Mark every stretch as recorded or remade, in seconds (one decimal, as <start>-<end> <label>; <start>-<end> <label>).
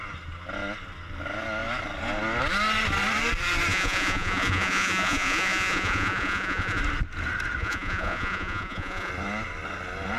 0.0-3.7 recorded; 3.7-6.8 remade; 6.8-7.6 recorded; 7.6-9.1 remade; 9.1-10.2 recorded